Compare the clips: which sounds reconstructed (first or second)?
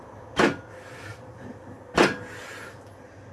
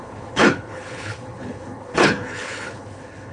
second